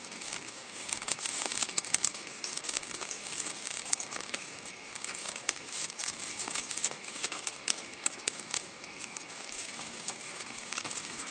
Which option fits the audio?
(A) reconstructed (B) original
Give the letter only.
A